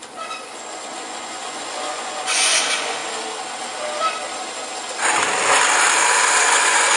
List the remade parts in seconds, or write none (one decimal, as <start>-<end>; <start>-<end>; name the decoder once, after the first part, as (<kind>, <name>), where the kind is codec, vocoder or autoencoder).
0.0-3.0 (vocoder, Vocos); 6.4-7.0